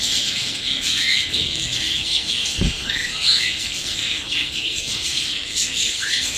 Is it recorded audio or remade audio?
remade